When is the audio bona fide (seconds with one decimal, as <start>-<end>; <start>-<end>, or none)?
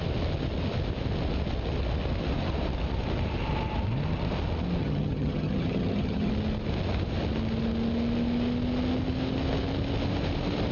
0.0-4.8; 6.3-10.7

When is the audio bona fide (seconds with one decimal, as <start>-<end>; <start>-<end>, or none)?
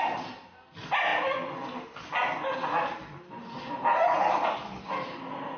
0.0-5.6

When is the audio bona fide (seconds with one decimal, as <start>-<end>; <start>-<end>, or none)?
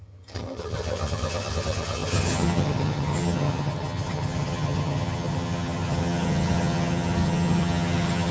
none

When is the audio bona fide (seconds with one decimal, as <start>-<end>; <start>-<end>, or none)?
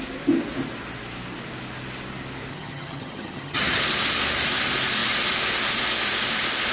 0.0-2.5; 3.8-6.7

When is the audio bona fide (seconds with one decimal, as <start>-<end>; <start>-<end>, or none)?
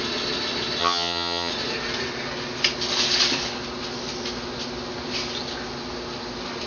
0.0-0.8; 1.5-6.7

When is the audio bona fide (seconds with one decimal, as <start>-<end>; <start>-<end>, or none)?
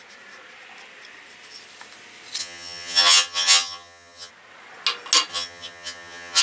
0.0-2.4; 4.3-5.3